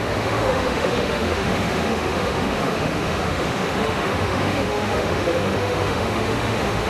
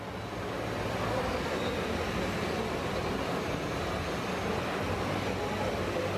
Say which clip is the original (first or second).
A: second